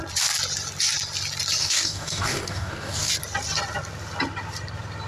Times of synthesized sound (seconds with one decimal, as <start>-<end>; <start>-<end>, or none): 1.6-3.1